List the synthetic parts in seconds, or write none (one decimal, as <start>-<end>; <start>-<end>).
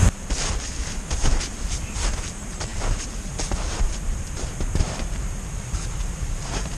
0.0-0.8; 2.2-6.8